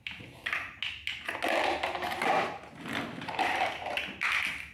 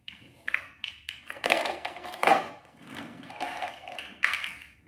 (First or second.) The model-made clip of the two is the second